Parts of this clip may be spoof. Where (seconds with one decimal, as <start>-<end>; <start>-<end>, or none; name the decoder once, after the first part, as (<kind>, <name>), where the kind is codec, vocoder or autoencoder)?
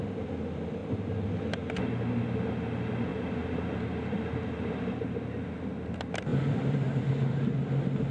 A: 0.8-1.4 (vocoder, BigVGAN v2); 6.3-7.0